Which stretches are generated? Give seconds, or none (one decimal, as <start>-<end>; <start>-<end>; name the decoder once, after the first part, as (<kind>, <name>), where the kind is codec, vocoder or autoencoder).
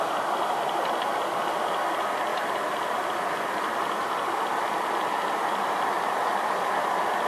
none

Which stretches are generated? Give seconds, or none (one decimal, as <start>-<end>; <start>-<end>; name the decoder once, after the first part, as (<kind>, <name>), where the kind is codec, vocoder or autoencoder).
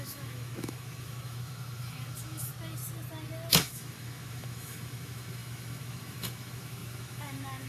0.0-2.5 (autoencoder, DAC-VAE); 3.5-7.7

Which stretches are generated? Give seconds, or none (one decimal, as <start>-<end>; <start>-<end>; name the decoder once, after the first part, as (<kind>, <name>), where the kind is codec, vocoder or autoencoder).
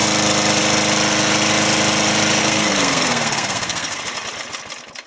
2.4-4.0 (codec, SNAC)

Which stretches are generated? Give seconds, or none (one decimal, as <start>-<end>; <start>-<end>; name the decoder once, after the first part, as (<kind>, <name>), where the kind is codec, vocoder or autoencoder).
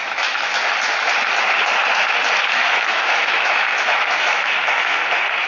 0.0-0.5 (autoencoder, DAC-VAE); 2.5-5.0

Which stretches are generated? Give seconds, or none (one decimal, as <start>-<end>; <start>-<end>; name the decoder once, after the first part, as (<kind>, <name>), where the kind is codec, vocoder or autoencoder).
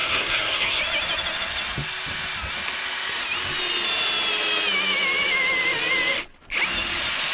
0.0-0.8 (codec, SNAC)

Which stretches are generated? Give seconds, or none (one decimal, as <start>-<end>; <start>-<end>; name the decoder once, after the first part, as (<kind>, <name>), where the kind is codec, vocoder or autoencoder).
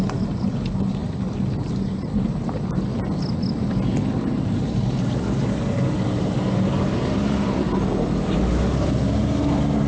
none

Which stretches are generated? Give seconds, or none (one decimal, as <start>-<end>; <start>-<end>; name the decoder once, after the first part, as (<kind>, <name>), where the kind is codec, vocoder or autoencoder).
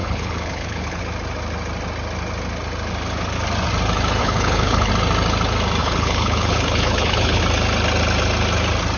0.0-1.0 (codec, HILCodec); 4.2-4.9; 5.8-7.4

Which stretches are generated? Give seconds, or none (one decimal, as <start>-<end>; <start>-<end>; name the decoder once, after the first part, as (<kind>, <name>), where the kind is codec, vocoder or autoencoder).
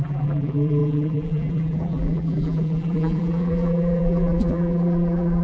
0.0-5.4 (vocoder, BigVGAN v2)